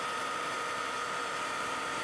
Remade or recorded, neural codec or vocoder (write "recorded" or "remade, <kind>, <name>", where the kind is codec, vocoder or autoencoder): remade, vocoder, BigVGAN v2